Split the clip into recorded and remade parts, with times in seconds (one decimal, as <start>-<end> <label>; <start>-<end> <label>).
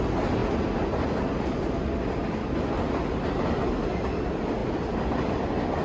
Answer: 0.0-5.8 recorded